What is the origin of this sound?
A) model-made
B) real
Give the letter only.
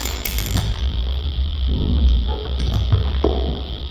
A